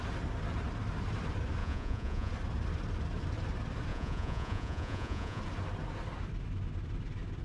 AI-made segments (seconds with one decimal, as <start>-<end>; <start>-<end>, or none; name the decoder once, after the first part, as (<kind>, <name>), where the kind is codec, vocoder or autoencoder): 1.6-2.3 (vocoder, Vocos); 3.9-5.4